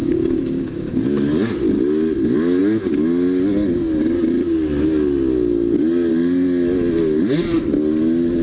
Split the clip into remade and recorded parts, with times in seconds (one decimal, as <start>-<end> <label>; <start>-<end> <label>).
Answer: 0.0-1.0 remade; 1.0-8.4 recorded

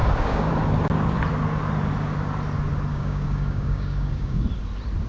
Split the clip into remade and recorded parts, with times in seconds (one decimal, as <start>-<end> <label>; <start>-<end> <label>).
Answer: 0.0-0.5 remade; 0.5-2.9 recorded; 2.9-4.4 remade; 4.4-5.1 recorded